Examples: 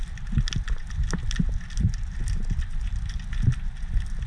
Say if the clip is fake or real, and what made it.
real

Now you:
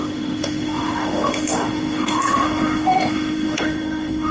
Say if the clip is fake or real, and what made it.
fake, autoencoder, DAC-VAE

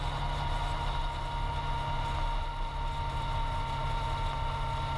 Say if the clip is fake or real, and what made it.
real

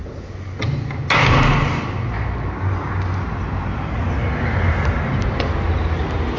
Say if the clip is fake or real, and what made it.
real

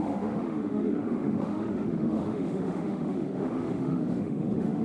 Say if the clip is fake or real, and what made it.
fake, autoencoder, DAC-VAE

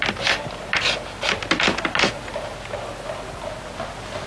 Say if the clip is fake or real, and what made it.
real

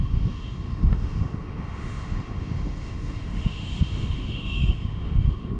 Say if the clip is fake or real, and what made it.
fake, autoencoder, DAC-VAE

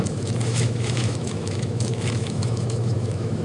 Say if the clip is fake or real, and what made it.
fake, autoencoder, DAC-VAE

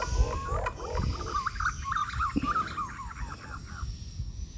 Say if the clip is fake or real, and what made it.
real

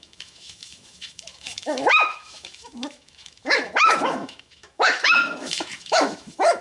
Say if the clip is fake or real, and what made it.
fake, autoencoder, DAC-VAE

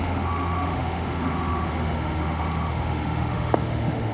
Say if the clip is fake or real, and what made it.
fake, autoencoder, DAC-VAE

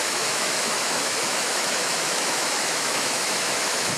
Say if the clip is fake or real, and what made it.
fake, autoencoder, DAC-VAE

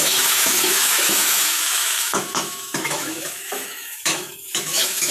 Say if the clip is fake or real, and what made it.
fake, autoencoder, DAC-VAE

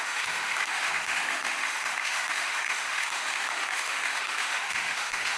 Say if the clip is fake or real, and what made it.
fake, autoencoder, DAC-VAE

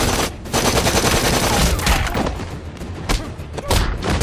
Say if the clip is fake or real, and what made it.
real